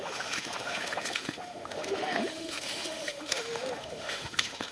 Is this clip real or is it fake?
fake